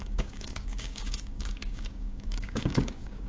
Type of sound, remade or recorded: remade